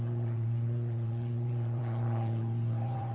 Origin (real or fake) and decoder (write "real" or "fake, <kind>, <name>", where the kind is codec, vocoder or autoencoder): fake, vocoder, Vocos